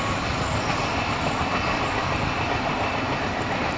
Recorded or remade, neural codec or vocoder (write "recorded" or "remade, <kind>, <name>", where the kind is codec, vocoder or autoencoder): recorded